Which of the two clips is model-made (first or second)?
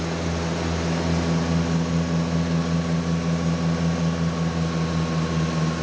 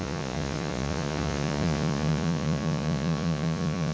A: second